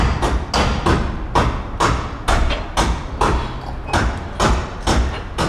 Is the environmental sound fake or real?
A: real